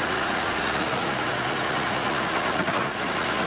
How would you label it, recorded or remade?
remade